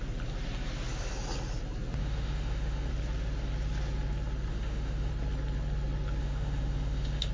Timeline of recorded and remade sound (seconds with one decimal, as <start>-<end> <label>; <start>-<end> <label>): 0.0-2.0 recorded; 2.0-2.9 remade; 2.9-4.5 recorded; 4.5-5.1 remade; 5.1-6.2 recorded; 6.2-7.3 remade